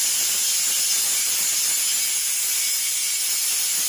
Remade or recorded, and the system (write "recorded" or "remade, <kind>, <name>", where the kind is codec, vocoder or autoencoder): recorded